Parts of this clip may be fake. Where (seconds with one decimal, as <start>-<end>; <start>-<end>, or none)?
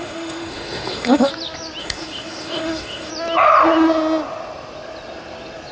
0.0-1.3; 1.8-3.1